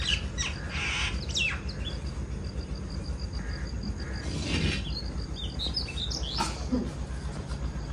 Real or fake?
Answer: real